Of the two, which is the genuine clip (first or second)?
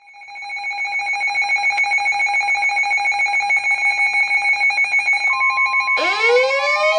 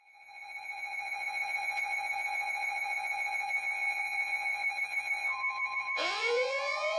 first